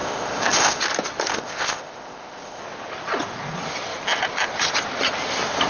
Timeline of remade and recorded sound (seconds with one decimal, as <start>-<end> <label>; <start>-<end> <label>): 0.0-0.8 remade; 0.8-1.3 recorded; 1.3-2.6 remade; 2.6-5.7 recorded

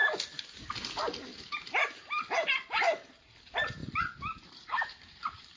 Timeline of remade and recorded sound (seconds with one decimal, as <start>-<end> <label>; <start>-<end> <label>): 0.0-3.4 recorded; 3.4-3.8 remade; 3.8-4.5 recorded; 4.5-5.6 remade